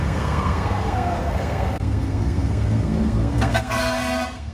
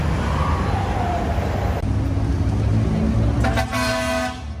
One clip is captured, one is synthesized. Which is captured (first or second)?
second